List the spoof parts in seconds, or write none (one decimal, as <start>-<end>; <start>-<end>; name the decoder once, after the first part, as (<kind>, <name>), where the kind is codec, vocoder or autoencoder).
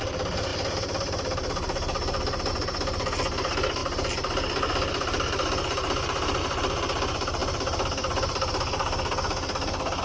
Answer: none